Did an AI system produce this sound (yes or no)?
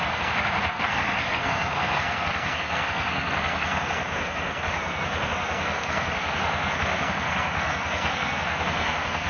yes